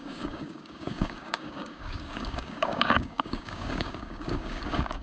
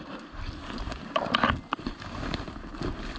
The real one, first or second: second